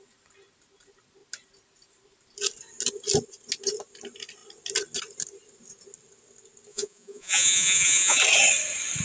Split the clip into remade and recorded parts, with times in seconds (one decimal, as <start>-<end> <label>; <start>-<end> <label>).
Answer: 0.0-6.7 recorded; 6.7-8.2 remade; 8.2-9.0 recorded

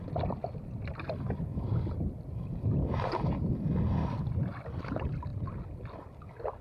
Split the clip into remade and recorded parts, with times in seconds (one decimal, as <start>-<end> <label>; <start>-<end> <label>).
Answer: 0.0-6.6 recorded

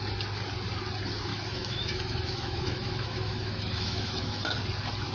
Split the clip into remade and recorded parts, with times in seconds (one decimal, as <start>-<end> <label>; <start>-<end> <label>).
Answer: 0.0-1.3 recorded; 1.3-4.4 remade; 4.4-5.1 recorded

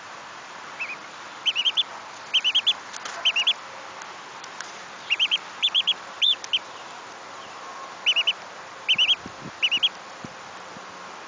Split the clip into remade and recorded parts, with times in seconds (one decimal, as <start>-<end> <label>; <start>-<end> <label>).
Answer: 0.0-1.0 recorded; 1.0-1.9 remade; 1.9-4.3 recorded; 4.3-7.0 remade; 7.0-11.3 recorded

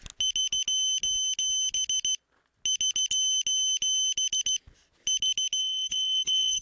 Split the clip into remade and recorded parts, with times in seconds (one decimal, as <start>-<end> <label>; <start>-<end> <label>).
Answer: 0.0-5.6 recorded; 5.6-6.6 remade

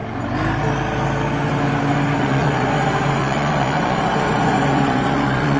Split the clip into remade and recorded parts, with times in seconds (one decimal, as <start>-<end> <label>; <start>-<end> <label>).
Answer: 0.0-2.2 recorded; 2.2-2.7 remade; 2.7-3.2 recorded; 3.2-5.6 remade